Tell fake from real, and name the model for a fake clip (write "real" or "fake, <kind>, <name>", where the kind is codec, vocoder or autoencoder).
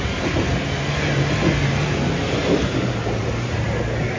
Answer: real